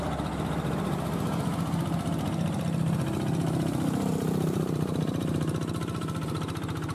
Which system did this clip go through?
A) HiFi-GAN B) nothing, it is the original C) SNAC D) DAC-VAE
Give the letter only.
B